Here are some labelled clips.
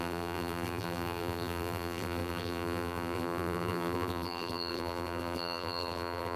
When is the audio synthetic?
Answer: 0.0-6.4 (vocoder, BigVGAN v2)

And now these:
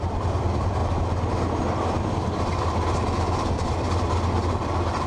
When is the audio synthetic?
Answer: 0.0-0.8 (vocoder, BigVGAN v2); 2.6-5.1